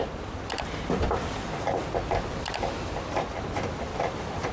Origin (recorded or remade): recorded